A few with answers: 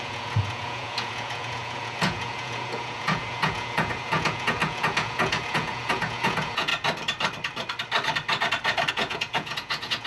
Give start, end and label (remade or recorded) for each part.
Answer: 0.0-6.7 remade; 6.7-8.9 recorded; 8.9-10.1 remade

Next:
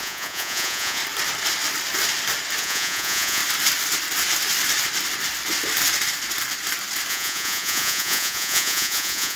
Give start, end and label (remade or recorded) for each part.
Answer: 0.0-1.0 remade; 1.0-2.6 recorded; 2.6-3.4 remade; 3.4-7.1 recorded; 7.1-9.4 remade

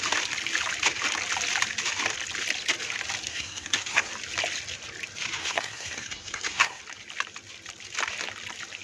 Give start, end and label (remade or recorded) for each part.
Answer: 0.0-3.3 recorded; 3.3-4.1 remade; 4.1-5.4 recorded; 5.4-6.8 remade; 6.8-8.8 recorded